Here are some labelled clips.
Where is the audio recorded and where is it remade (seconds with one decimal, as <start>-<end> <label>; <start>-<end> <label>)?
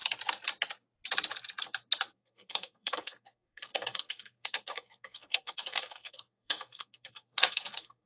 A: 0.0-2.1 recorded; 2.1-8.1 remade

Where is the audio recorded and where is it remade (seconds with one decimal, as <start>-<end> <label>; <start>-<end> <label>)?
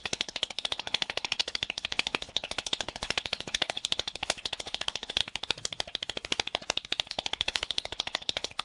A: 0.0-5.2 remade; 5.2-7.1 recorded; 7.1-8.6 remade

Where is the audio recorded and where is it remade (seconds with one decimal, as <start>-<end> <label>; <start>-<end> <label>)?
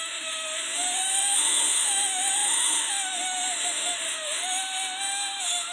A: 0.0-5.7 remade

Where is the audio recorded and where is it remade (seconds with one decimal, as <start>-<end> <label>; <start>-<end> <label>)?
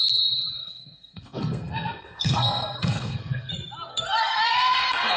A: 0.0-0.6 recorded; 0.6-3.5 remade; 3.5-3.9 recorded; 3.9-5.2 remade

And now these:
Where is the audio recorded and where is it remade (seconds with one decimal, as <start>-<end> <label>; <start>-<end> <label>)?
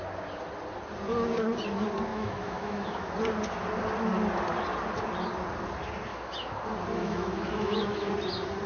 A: 0.0-2.1 recorded; 2.1-3.1 remade; 3.1-6.1 recorded; 6.1-6.6 remade; 6.6-7.0 recorded; 7.0-8.1 remade; 8.1-8.7 recorded